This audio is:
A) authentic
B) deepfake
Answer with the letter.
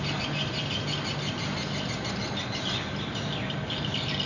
A